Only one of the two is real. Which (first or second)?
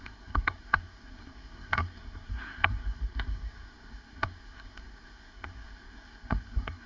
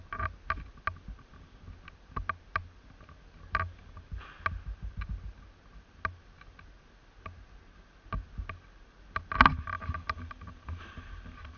second